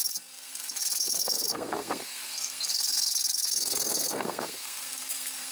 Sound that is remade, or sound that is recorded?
remade